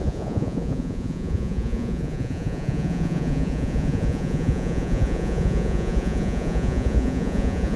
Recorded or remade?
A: remade